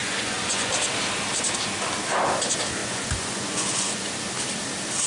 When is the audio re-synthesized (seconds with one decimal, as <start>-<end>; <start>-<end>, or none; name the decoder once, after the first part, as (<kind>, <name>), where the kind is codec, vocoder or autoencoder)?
0.0-0.7 (vocoder, Vocos); 2.8-4.1

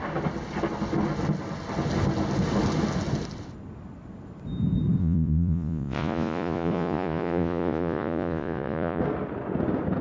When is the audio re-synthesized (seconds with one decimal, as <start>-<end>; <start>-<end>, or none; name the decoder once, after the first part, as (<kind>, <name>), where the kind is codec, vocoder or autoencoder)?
5.0-9.0 (vocoder, Vocos)